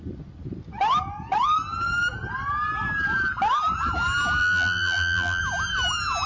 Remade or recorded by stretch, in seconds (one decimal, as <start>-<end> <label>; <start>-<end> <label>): 0.0-4.4 recorded; 4.4-5.4 remade; 5.4-6.3 recorded